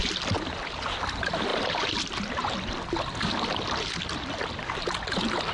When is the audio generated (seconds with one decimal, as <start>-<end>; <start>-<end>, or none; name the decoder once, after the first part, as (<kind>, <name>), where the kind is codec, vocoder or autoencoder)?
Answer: none